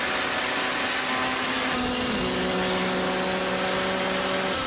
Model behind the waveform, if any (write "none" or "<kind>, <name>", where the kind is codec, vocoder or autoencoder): none